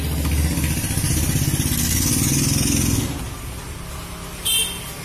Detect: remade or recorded recorded